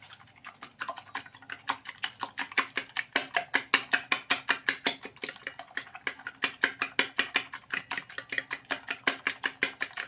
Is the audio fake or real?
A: real